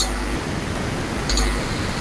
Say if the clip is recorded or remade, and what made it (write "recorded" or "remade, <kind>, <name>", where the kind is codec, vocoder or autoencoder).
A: recorded